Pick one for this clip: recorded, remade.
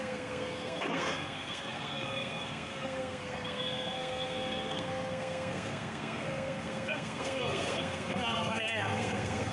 remade